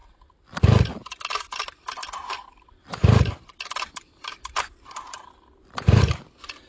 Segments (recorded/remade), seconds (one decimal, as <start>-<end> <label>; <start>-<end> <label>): 0.0-6.7 recorded